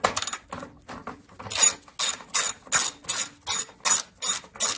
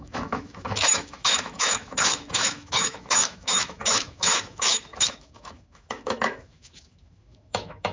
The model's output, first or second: second